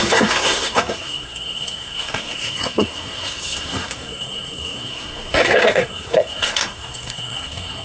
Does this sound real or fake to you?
fake